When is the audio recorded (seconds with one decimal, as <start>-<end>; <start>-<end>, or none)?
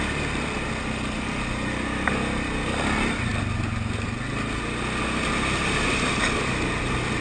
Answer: 0.0-7.2